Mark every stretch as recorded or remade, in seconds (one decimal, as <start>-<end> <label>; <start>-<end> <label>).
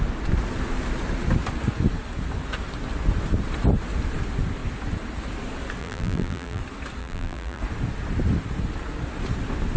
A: 0.0-5.8 recorded; 5.8-6.6 remade; 6.6-7.0 recorded; 7.0-7.6 remade; 7.6-9.8 recorded